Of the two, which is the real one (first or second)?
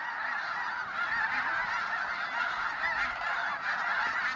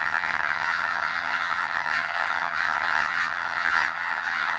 first